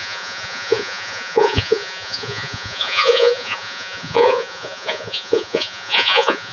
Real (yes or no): no